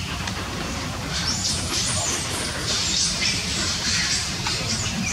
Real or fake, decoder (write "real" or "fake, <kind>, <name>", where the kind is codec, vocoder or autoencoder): fake, vocoder, BigVGAN v2